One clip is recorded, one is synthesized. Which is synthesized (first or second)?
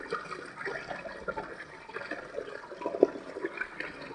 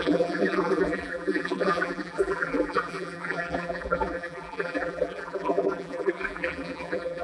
second